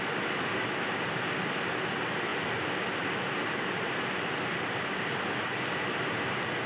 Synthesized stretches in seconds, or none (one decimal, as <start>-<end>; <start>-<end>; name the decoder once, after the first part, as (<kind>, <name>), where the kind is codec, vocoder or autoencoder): none